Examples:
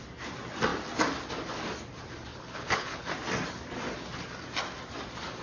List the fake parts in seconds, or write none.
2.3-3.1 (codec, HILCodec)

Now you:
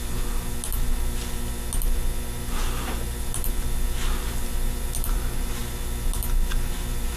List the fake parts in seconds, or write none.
none

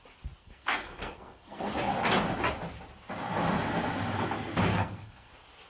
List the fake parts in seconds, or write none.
0.4-1.7 (codec, SNAC); 4.7-5.3

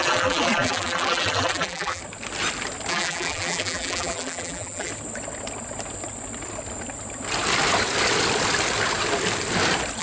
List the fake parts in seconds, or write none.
0.0-2.0 (vocoder, BigVGAN v2); 2.9-4.9